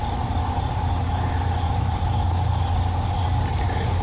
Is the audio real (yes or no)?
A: yes